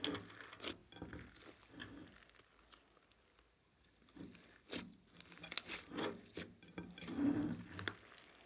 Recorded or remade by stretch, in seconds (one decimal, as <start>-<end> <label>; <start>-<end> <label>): 0.0-8.5 recorded